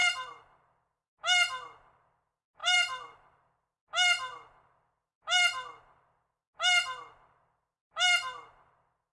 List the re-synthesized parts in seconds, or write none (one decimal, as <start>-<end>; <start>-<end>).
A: 0.0-0.6; 2.6-3.5